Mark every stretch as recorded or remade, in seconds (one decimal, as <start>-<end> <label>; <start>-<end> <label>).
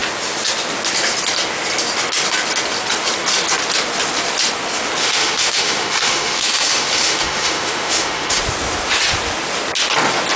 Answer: 0.0-5.0 recorded; 5.0-8.4 remade; 8.4-10.4 recorded